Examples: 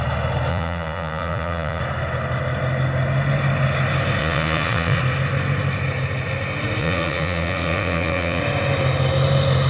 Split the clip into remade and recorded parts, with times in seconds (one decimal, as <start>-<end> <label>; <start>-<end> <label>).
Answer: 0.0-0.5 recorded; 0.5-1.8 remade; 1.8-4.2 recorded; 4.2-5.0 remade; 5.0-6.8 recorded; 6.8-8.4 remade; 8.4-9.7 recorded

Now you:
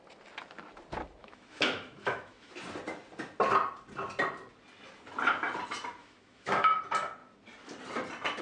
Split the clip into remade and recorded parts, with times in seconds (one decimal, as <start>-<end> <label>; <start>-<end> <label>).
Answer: 0.0-1.2 recorded; 1.2-2.5 remade; 2.5-6.0 recorded; 6.0-6.8 remade; 6.8-8.4 recorded

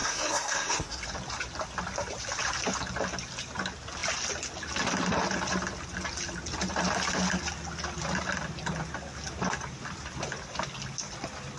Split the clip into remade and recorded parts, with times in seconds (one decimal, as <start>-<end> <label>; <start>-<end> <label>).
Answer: 0.0-1.0 remade; 1.0-11.6 recorded